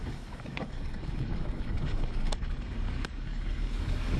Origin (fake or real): fake